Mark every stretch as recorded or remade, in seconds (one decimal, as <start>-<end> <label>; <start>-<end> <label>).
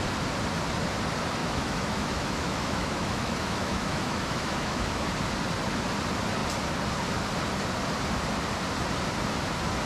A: 0.0-1.4 recorded; 1.4-5.1 remade; 5.1-9.9 recorded